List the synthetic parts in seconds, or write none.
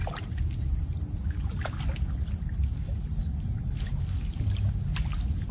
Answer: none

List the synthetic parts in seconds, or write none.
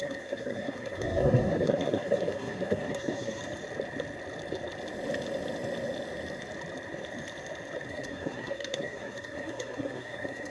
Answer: 0.0-3.4 (codec, SNAC); 7.9-10.5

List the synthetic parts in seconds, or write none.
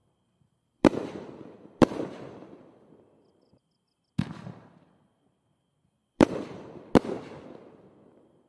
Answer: 0.0-2.9 (vocoder, BigVGAN v2); 6.0-6.8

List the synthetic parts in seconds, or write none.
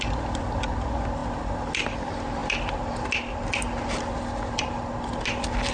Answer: none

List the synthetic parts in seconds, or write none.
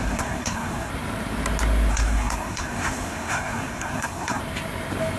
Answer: 0.0-0.9 (codec, SNAC); 1.9-4.4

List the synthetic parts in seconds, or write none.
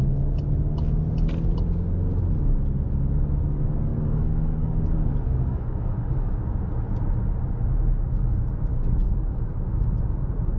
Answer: 3.9-6.3 (codec, DAC); 8.7-9.4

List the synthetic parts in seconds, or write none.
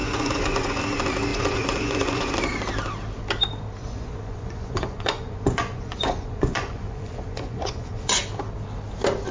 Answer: 0.0-0.8 (vocoder, Vocos); 1.3-2.3; 3.8-8.2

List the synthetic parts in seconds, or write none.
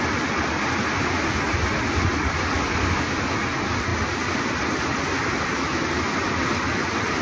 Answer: none